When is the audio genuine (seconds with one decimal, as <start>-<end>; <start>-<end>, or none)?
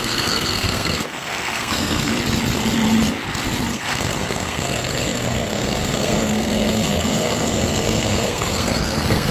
2.1-3.7